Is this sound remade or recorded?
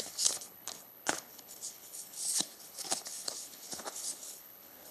remade